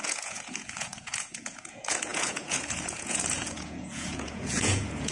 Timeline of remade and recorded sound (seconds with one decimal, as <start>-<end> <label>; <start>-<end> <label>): 0.0-5.1 remade